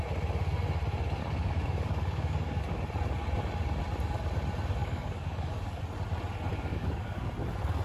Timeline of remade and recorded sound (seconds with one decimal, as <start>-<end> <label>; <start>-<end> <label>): 0.0-1.2 recorded; 1.2-2.6 remade; 2.6-4.8 recorded; 4.8-5.8 remade; 5.8-6.5 recorded; 6.5-7.3 remade; 7.3-7.8 recorded